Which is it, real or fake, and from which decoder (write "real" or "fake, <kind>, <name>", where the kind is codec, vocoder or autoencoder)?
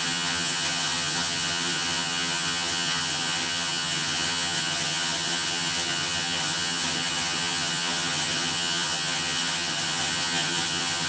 fake, vocoder, HiFi-GAN